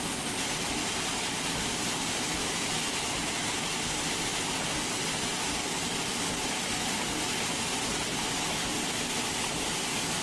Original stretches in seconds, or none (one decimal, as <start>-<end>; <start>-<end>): 0.0-2.4; 3.5-10.2